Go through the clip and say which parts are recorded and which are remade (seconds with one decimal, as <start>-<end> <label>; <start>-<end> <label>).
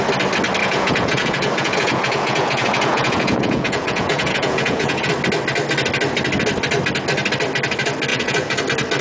0.0-0.6 recorded; 0.6-5.1 remade; 5.1-8.1 recorded; 8.1-8.6 remade; 8.6-9.0 recorded